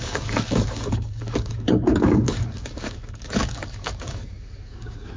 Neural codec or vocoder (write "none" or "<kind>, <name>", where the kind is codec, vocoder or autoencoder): codec, DAC